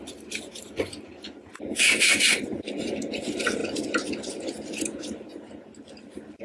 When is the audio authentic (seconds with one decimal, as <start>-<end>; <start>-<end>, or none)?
3.6-5.9